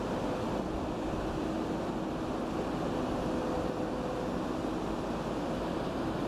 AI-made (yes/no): no